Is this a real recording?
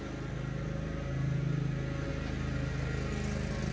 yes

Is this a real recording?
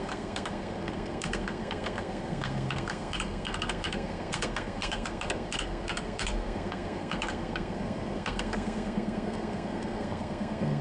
no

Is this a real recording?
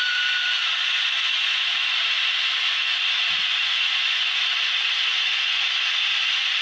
no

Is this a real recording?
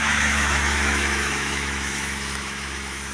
no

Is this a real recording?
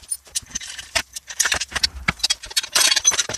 no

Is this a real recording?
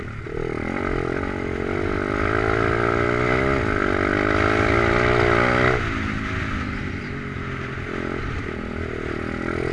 yes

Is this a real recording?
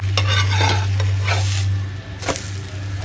yes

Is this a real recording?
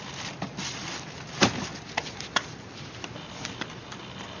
yes